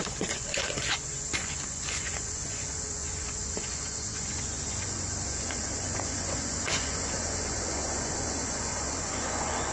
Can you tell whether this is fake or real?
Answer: fake